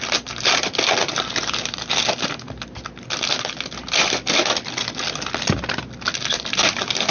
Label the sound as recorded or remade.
recorded